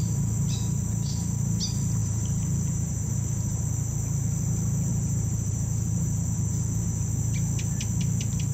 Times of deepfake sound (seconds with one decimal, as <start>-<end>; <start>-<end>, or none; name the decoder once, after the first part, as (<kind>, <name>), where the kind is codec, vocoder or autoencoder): 2.0-3.6 (vocoder, BigVGAN v2); 4.9-7.1